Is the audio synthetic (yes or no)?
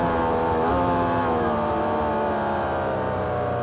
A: no